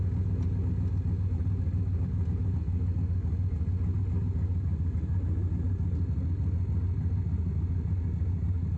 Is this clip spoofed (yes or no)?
no